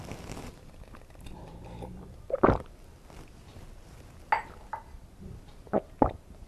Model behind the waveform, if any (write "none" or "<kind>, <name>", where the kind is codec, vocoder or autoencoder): none